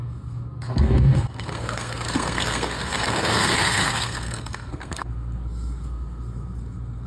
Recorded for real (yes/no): no